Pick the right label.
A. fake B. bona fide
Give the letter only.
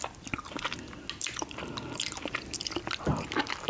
B